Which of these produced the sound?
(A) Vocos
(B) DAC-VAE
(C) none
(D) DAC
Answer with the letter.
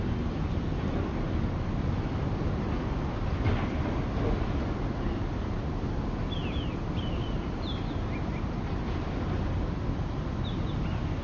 C